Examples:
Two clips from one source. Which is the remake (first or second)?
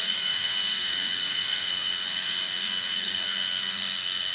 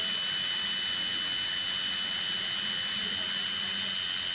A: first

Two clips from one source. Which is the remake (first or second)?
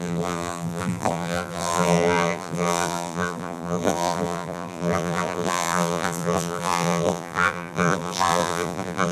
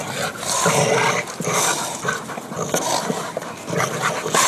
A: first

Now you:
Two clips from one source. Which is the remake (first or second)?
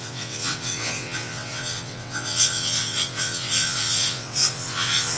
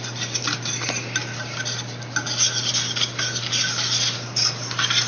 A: first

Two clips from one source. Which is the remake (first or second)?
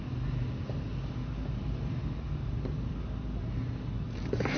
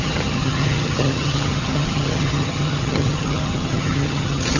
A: second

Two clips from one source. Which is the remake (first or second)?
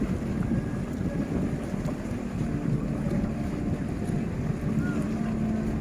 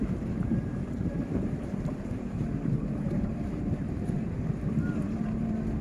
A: second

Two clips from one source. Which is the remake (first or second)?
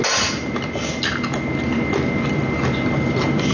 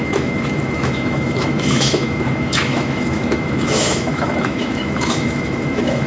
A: second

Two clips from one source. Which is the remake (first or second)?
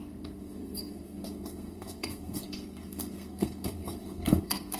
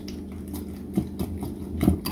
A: first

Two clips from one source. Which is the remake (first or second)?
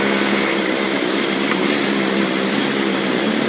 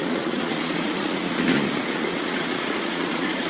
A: second